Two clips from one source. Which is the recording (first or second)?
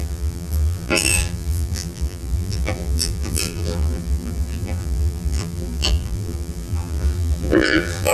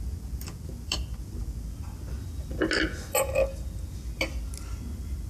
second